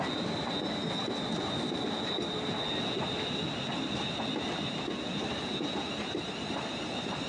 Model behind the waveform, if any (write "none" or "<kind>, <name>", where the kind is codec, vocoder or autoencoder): none